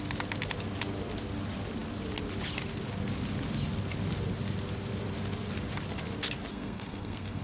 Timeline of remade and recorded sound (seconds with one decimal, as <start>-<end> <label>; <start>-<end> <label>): 0.0-6.5 recorded; 6.5-7.4 remade